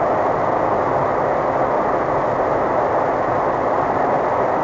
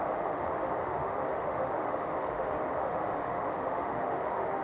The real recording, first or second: first